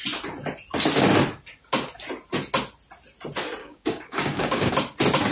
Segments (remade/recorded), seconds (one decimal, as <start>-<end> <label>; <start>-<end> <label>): 0.0-3.6 recorded; 3.6-4.7 remade; 4.7-5.3 recorded